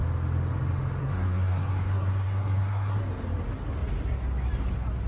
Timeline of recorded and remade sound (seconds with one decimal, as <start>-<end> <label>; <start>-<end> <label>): 0.0-1.0 recorded; 1.0-3.0 remade; 3.0-5.1 recorded